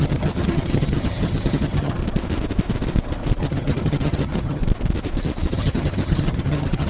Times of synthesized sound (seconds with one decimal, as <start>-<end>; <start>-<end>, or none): 0.0-2.0; 3.4-4.6; 5.5-6.9